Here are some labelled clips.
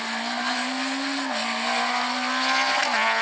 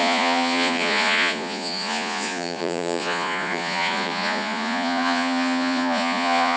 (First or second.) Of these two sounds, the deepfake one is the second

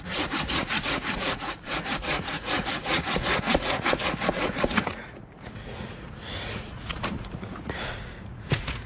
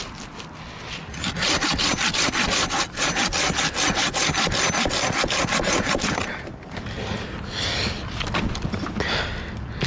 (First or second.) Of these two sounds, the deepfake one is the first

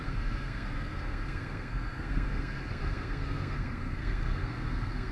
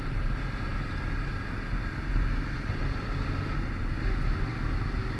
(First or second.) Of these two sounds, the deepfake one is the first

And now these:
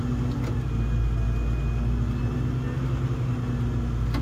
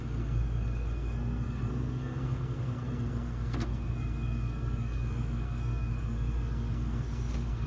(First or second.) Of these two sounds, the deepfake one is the second